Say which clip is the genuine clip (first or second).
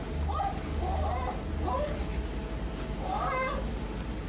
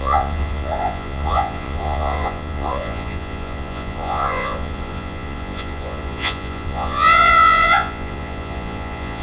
first